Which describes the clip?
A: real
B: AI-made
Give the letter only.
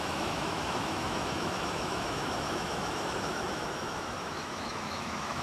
B